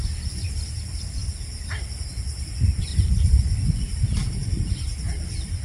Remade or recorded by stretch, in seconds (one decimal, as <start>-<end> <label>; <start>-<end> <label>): 0.0-1.2 remade; 1.2-2.1 recorded; 2.1-2.9 remade; 2.9-3.9 recorded; 3.9-5.6 remade